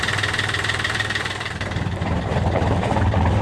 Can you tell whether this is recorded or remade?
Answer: remade